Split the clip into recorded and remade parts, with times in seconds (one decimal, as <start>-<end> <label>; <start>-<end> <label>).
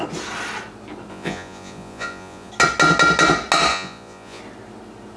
0.0-1.1 recorded; 1.1-2.5 remade; 2.5-3.7 recorded; 3.7-4.4 remade; 4.4-5.2 recorded